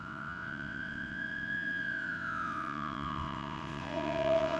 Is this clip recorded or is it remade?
remade